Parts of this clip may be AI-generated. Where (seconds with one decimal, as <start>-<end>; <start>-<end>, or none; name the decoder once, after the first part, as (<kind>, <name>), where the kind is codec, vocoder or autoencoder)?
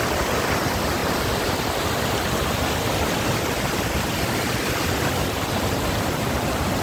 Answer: none